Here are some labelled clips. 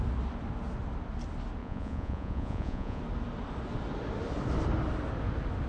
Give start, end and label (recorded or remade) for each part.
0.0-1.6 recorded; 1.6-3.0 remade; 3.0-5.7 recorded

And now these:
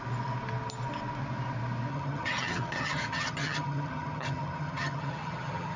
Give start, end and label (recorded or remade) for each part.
0.0-1.9 recorded; 1.9-5.8 remade